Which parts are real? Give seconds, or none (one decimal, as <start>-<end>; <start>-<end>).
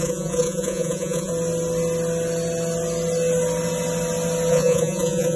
1.3-4.5